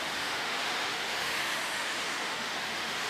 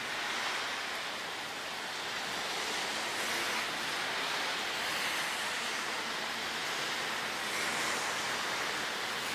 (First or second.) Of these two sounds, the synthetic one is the first